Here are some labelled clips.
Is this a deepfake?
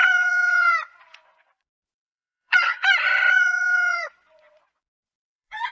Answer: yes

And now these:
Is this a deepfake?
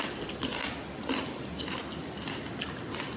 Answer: no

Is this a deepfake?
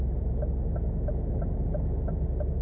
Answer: no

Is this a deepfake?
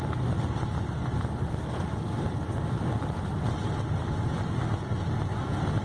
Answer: no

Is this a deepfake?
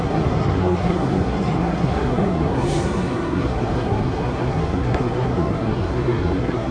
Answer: yes